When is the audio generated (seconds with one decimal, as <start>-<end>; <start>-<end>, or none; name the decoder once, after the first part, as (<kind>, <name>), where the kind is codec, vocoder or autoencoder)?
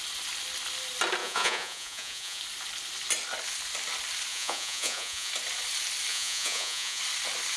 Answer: 1.2-2.4 (vocoder, Vocos); 4.3-5.3; 6.1-7.0